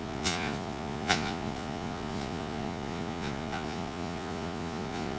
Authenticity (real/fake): fake